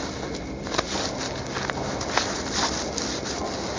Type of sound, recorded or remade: recorded